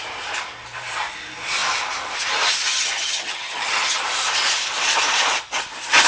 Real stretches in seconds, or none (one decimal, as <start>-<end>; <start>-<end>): 0.0-2.7; 4.0-6.1